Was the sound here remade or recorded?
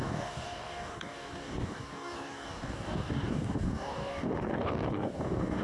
remade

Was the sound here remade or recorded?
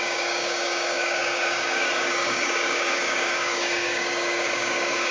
remade